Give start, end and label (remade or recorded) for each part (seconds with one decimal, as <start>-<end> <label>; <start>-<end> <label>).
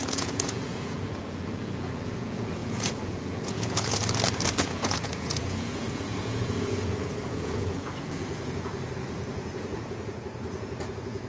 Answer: 0.0-4.0 remade; 4.0-4.6 recorded; 4.6-11.3 remade